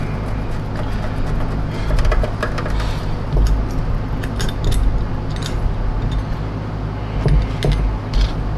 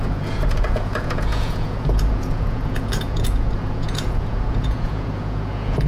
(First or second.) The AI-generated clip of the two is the second